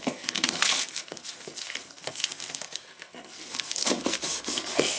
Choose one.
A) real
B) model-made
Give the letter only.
B